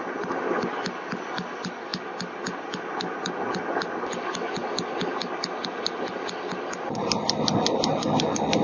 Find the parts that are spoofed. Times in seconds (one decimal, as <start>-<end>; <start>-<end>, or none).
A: none